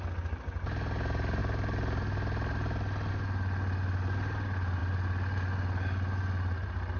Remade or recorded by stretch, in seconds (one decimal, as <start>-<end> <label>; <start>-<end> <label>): 0.0-7.0 recorded